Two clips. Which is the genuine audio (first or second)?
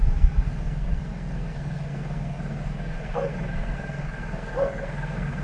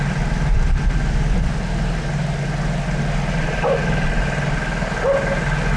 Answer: second